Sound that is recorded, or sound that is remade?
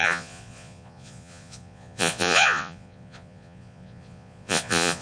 remade